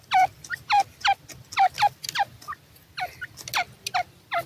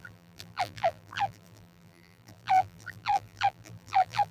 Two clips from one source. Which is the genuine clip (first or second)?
first